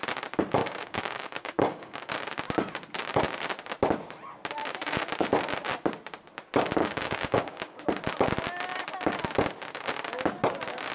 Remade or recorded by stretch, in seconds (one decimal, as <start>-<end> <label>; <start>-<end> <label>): 0.0-0.6 recorded; 0.6-2.1 remade; 2.1-6.8 recorded; 6.8-7.8 remade; 7.8-10.9 recorded